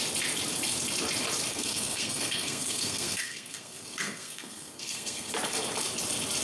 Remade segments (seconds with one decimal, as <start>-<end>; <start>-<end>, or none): 1.5-5.3